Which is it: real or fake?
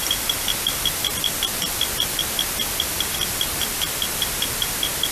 real